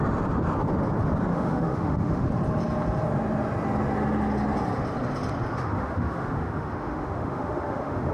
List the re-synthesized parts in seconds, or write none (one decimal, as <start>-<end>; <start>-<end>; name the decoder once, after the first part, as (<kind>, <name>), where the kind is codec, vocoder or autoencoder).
1.3-2.2 (autoencoder, DAC-VAE); 5.5-8.1